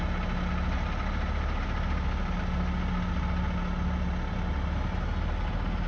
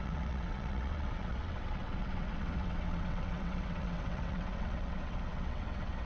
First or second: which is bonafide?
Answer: first